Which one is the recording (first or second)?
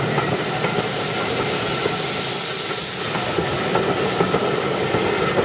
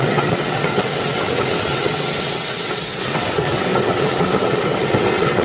first